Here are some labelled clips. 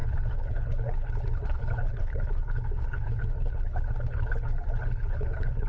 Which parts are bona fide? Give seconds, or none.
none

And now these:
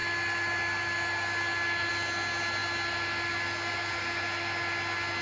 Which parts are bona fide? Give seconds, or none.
0.0-5.2

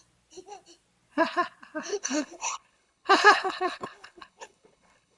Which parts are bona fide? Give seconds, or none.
0.0-1.9

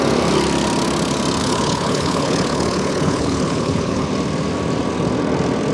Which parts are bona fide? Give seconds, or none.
0.0-1.4; 4.1-5.7

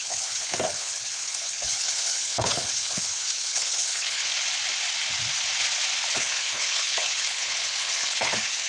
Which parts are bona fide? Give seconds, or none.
4.3-6.1

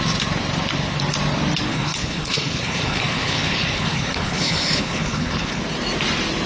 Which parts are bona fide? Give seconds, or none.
0.0-1.7; 5.6-6.5